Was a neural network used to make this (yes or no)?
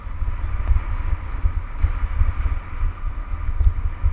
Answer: no